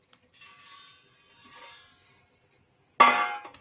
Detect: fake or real real